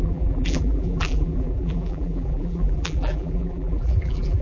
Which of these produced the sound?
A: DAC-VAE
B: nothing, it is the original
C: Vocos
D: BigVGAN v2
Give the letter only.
D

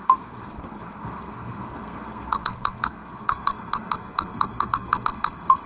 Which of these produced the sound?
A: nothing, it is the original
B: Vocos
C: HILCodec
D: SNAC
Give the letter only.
D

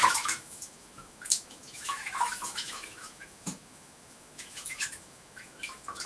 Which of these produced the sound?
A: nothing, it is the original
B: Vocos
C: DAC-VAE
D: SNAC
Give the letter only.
C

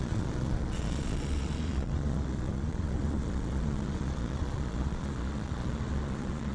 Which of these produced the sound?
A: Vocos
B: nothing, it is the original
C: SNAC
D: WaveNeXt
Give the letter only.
A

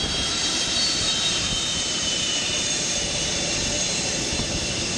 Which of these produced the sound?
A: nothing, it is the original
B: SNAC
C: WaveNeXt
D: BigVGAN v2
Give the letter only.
D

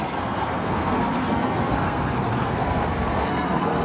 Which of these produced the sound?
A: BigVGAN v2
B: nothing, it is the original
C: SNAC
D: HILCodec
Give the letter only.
C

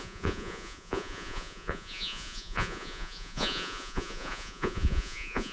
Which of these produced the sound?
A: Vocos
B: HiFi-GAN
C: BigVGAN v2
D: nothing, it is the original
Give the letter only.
A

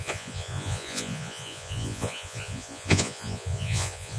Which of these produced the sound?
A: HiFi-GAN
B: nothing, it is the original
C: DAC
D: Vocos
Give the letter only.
D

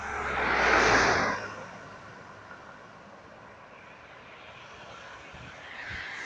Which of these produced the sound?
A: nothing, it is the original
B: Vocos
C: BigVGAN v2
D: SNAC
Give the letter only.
A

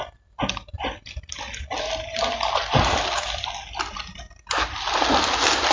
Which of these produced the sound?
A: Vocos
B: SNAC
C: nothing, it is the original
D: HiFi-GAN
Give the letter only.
C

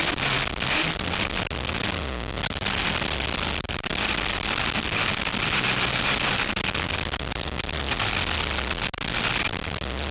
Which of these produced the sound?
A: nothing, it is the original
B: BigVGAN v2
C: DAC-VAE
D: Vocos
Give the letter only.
A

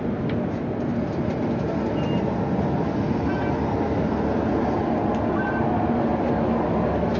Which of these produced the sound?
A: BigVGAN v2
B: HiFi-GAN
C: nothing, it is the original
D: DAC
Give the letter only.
C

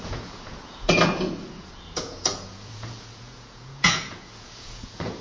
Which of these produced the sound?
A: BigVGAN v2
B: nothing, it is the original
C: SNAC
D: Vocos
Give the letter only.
D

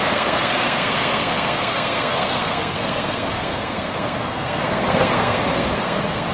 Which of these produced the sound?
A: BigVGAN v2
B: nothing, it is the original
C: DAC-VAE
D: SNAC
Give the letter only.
D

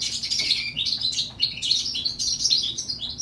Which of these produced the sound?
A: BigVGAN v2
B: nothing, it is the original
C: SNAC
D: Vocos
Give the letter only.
D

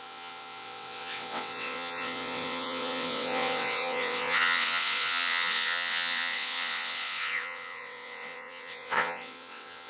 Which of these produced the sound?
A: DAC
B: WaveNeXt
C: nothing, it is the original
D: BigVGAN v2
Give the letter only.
B